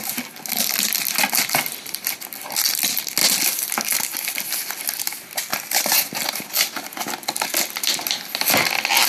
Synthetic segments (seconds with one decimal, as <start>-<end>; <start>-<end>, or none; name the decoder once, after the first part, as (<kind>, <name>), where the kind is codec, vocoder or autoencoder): none